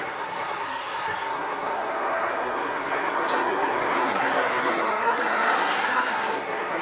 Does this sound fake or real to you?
fake